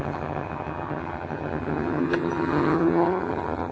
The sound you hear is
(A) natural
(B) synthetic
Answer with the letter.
B